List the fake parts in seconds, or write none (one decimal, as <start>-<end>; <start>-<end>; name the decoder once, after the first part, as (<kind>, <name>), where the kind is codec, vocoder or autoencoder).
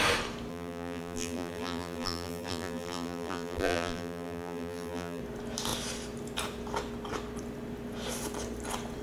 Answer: 0.5-5.2 (vocoder, BigVGAN v2)